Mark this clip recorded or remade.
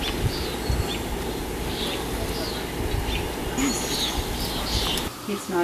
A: recorded